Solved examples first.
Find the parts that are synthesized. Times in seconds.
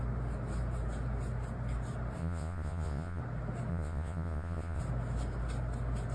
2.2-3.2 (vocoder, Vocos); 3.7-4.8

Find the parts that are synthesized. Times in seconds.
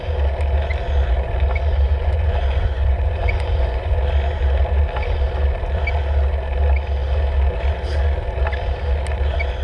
2.0-4.0 (vocoder, Vocos)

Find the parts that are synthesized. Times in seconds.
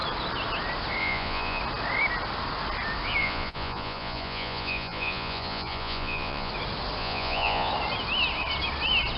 1.0-1.6 (vocoder, Vocos); 3.2-6.5; 7.0-7.7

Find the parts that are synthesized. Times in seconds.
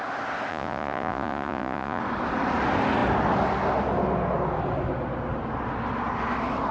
0.5-2.0 (vocoder, Vocos)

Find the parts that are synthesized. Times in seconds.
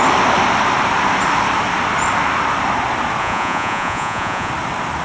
3.2-4.5 (vocoder, Vocos)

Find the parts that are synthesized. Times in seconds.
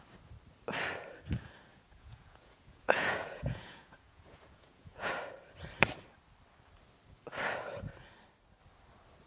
1.7-5.1 (vocoder, Vocos)